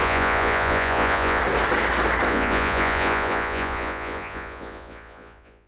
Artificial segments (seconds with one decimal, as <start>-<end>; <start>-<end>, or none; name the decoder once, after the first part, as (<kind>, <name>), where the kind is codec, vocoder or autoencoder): 0.0-1.4 (vocoder, Vocos); 2.3-5.7